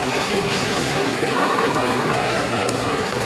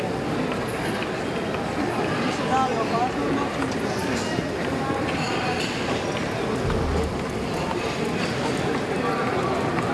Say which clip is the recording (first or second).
second